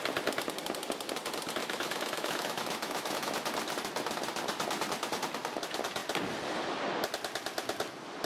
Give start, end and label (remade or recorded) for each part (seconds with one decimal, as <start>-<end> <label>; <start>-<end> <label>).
0.0-1.6 recorded; 1.6-3.3 remade; 3.3-8.3 recorded